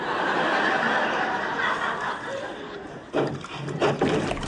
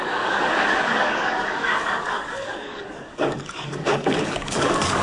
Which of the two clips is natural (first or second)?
first